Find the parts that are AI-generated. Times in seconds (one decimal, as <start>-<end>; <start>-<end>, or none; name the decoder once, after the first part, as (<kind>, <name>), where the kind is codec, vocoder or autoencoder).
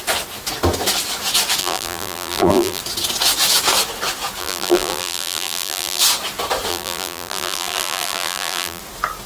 1.6-2.8 (vocoder, BigVGAN v2); 4.4-6.0; 6.7-8.8